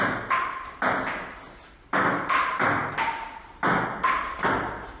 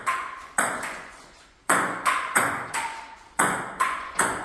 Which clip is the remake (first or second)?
second